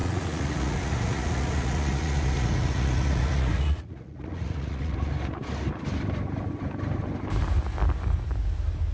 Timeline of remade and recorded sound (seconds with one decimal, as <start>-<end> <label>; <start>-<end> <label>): 0.0-5.1 remade; 5.1-8.9 recorded